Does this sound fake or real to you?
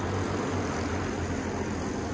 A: real